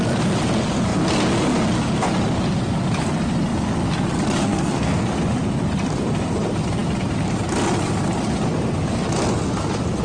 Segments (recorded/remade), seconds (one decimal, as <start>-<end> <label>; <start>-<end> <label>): 0.0-4.4 recorded; 4.4-5.1 remade; 5.1-10.0 recorded